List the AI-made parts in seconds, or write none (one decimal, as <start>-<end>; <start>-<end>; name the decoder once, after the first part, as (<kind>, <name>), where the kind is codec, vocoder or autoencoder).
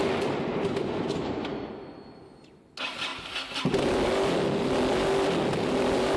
none